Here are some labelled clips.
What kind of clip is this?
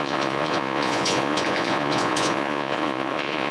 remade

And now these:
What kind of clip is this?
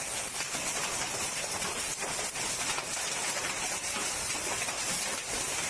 recorded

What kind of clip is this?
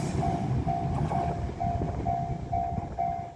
recorded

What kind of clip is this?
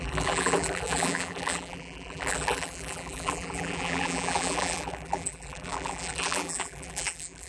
remade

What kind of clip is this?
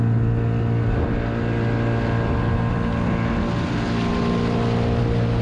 recorded